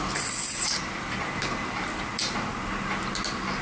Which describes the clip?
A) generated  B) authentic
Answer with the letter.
B